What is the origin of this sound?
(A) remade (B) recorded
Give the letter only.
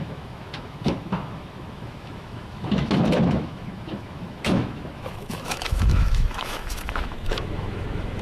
A